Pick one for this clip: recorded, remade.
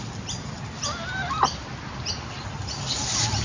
recorded